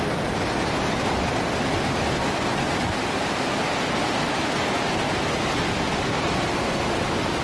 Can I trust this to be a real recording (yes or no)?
yes